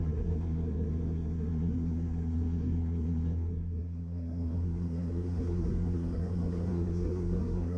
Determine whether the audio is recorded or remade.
remade